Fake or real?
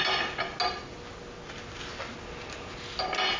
real